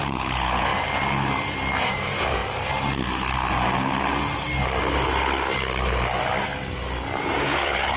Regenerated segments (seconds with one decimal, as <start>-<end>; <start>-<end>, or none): 0.0-0.7; 1.8-2.4; 7.2-8.0